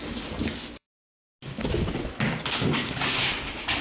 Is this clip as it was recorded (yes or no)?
yes